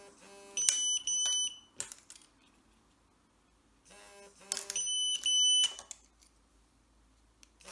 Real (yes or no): yes